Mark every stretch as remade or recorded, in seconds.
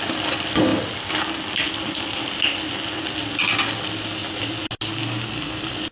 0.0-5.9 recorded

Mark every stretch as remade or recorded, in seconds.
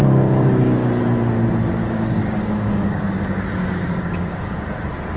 0.0-1.0 remade; 1.0-1.8 recorded; 1.8-3.0 remade; 3.0-3.6 recorded; 3.6-4.6 remade; 4.6-5.2 recorded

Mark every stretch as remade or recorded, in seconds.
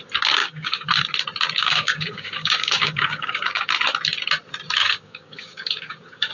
0.0-0.4 recorded; 0.4-0.9 remade; 0.9-1.6 recorded; 1.6-3.7 remade; 3.7-4.8 recorded; 4.8-6.3 remade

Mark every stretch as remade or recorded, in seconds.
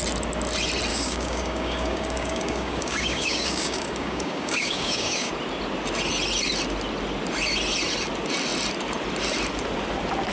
0.0-0.9 recorded; 0.9-5.3 remade; 5.3-10.3 recorded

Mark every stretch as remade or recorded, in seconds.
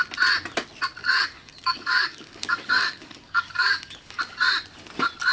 0.0-1.0 recorded; 1.0-4.2 remade; 4.2-5.3 recorded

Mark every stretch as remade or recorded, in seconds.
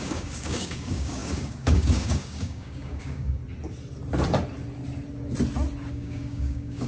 0.0-3.4 remade; 3.4-5.9 recorded; 5.9-6.9 remade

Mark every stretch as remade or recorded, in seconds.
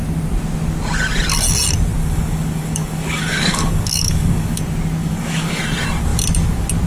0.0-2.0 recorded; 2.0-4.6 remade; 4.6-5.0 recorded; 5.0-5.6 remade; 5.6-6.9 recorded